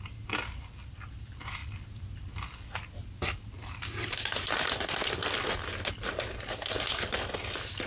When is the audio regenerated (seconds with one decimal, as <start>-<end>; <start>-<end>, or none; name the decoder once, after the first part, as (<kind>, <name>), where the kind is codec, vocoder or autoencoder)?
none